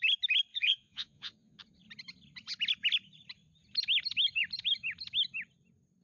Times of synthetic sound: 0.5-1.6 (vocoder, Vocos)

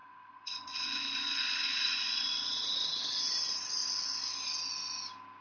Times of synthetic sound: 0.0-3.2 (vocoder, Vocos)

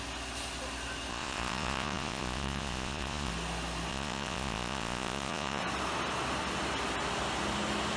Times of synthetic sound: 1.1-3.3 (vocoder, Vocos); 3.9-5.6

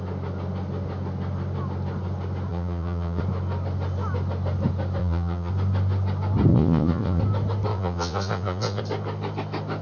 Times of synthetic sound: 2.5-3.2 (vocoder, Vocos); 5.0-5.5; 6.5-7.2; 7.7-8.8

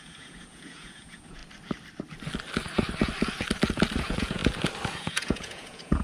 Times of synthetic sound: 0.0-1.4 (vocoder, Vocos); 4.0-4.4; 4.9-6.0